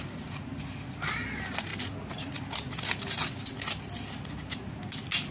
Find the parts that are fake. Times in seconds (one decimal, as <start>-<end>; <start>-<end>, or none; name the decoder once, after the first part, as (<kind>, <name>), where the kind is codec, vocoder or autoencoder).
none